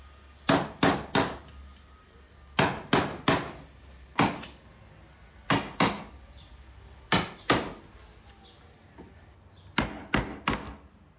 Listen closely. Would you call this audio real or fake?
real